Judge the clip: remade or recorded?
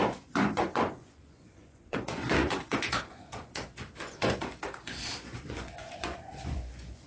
remade